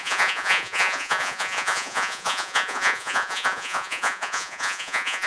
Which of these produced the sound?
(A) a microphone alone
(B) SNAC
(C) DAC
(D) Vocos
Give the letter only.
D